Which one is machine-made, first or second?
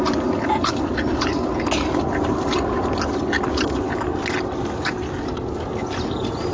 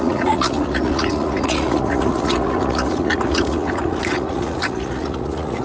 second